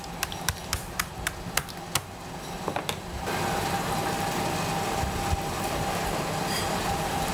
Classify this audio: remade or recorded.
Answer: recorded